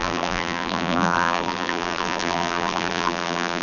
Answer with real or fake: fake